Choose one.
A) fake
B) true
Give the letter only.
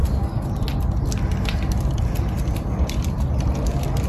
B